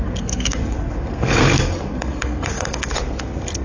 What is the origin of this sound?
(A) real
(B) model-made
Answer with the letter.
B